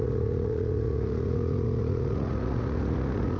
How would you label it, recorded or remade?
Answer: remade